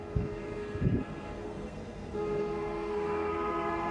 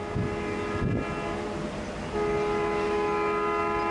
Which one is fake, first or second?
first